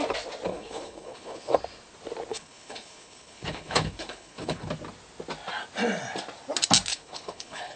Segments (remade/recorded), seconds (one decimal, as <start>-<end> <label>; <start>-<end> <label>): 0.0-0.5 recorded; 0.5-1.6 remade; 1.6-2.3 recorded; 2.3-4.7 remade; 4.7-6.9 recorded; 6.9-7.8 remade